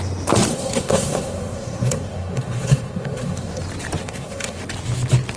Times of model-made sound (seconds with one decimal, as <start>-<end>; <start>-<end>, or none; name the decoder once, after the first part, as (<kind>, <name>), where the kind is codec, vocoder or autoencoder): 0.5-3.6 (codec, SNAC); 4.0-4.6